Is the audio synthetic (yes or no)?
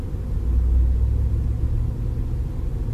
no